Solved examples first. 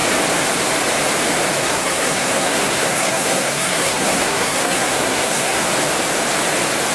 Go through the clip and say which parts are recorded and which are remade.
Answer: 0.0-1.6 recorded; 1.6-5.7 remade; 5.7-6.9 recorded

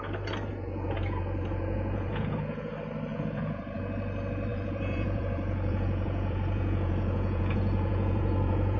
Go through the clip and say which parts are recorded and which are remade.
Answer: 0.0-0.5 recorded; 0.5-2.7 remade; 2.7-3.1 recorded; 3.1-3.8 remade; 3.8-4.5 recorded; 4.5-8.8 remade

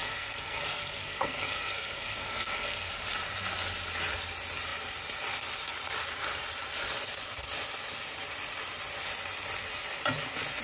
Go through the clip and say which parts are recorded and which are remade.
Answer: 0.0-2.9 remade; 2.9-10.6 recorded

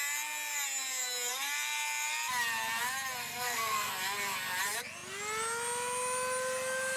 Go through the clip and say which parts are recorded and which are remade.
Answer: 0.0-3.2 recorded; 3.2-3.9 remade; 3.9-7.0 recorded

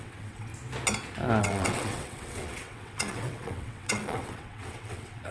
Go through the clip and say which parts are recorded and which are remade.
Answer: 0.0-0.5 remade; 0.5-1.4 recorded; 1.4-5.3 remade